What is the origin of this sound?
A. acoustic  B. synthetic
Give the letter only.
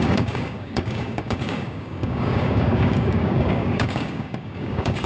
B